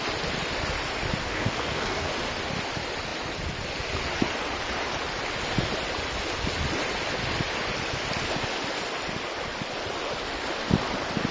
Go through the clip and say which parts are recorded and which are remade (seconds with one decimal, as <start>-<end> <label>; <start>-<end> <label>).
0.0-1.2 recorded; 1.2-2.1 remade; 2.1-11.3 recorded

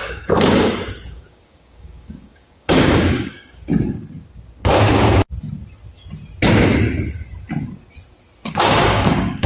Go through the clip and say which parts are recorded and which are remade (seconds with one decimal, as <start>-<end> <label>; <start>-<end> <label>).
0.0-3.7 remade; 3.7-8.5 recorded; 8.5-9.5 remade

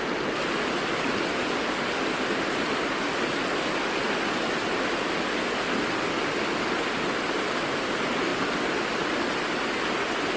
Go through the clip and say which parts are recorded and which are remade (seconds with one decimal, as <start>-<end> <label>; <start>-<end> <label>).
0.0-10.4 recorded